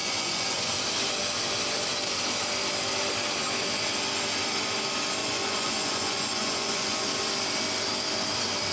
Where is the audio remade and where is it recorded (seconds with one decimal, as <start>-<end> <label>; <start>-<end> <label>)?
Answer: 0.0-0.7 remade; 0.7-5.2 recorded; 5.2-7.1 remade; 7.1-8.7 recorded